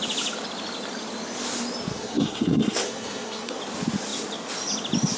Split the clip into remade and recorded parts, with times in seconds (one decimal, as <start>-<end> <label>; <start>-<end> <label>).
0.0-1.9 recorded; 1.9-3.6 remade; 3.6-5.2 recorded